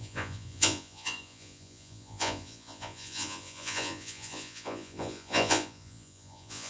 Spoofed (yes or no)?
yes